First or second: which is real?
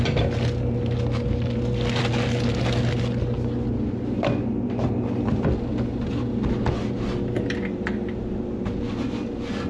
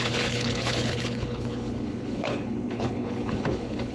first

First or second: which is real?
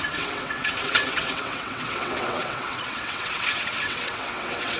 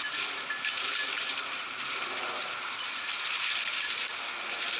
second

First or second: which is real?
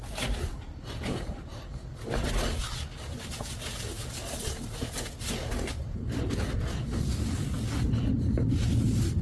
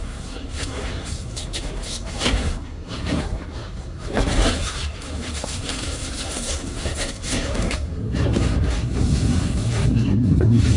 first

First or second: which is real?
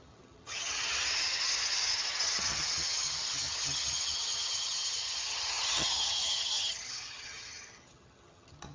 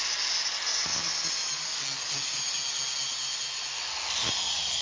second